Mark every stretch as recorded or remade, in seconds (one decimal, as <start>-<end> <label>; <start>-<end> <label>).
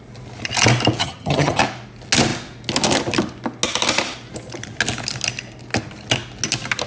0.0-1.0 recorded; 1.0-1.6 remade; 1.6-6.9 recorded